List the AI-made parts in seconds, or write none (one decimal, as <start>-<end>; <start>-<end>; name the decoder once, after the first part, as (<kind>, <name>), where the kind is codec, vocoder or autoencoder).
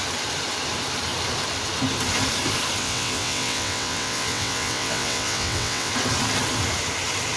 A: 2.8-5.9 (vocoder, WaveNeXt)